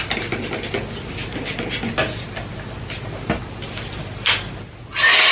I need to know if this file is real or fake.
real